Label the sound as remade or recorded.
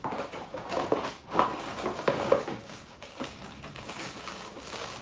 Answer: remade